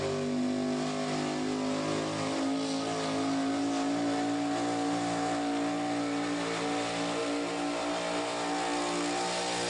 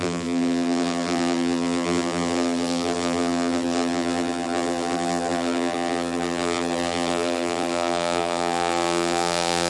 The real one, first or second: first